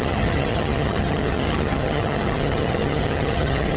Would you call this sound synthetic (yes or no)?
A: yes